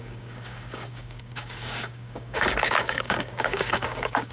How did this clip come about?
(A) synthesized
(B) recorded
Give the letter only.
A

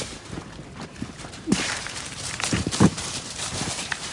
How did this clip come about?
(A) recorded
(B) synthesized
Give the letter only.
B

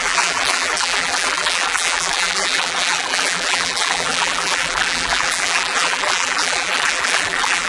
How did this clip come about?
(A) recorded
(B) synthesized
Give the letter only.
B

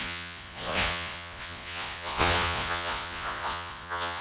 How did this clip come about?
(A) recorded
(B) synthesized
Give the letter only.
B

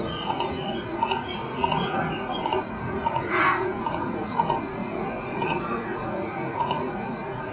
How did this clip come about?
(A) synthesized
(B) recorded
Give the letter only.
A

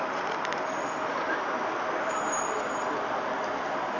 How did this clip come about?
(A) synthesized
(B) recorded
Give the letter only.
B